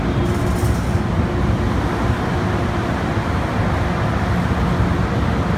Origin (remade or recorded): recorded